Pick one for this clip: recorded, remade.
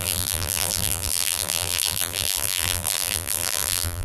remade